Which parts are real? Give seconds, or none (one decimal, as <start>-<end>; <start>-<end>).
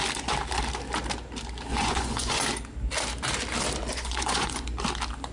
0.0-1.7; 2.4-3.9; 4.7-5.3